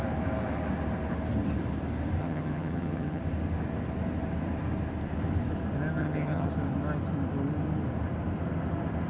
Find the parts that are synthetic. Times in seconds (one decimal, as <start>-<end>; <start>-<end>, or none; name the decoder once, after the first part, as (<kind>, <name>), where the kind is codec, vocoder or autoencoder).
2.2-3.2 (vocoder, HiFi-GAN); 6.0-6.5